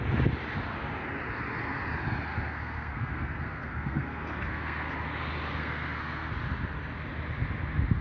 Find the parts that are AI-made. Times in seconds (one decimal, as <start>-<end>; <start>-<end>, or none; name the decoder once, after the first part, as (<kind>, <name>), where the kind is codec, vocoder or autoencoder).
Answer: 2.3-4.9 (codec, SNAC); 5.6-6.3